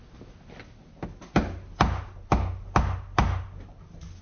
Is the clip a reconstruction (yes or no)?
no